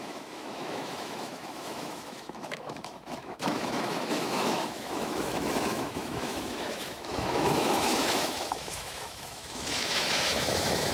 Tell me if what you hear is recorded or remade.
remade